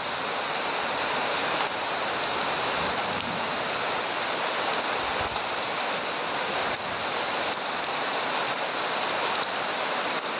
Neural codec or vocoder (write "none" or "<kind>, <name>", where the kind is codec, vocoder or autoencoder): none